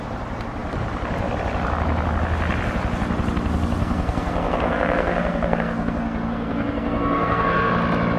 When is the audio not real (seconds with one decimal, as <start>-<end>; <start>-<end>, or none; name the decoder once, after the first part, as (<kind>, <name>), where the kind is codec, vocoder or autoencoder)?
3.8-7.7 (codec, SNAC)